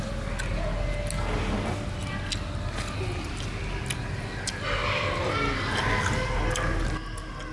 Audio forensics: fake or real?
real